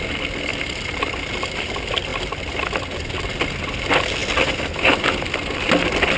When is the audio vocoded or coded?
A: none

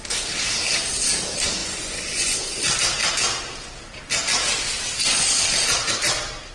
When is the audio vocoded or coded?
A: 1.6-2.4 (vocoder, Vocos)

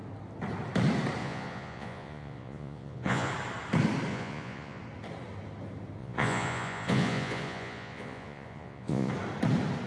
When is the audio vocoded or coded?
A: 1.2-3.3 (vocoder, Vocos); 4.1-4.8; 6.0-9.1

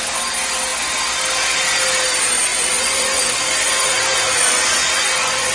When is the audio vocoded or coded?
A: 2.5-5.5 (vocoder, Vocos)

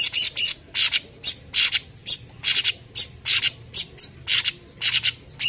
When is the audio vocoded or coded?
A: none

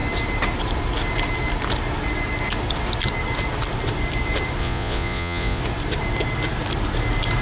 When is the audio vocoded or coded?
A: 4.6-5.6 (vocoder, Vocos)

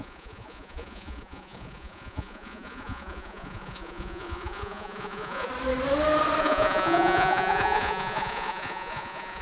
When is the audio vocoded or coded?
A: 0.0-5.5 (vocoder, Vocos); 6.4-9.4

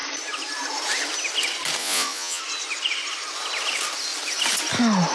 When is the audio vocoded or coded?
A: 1.8-2.4 (vocoder, Vocos)